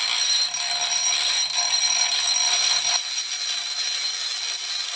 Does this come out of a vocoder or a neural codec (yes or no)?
no